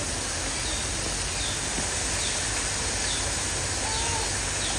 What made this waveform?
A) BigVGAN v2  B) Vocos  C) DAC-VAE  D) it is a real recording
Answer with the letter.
D